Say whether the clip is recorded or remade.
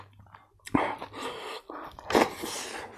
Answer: recorded